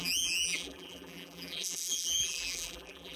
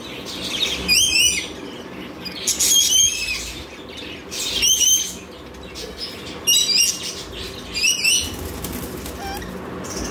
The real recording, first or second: second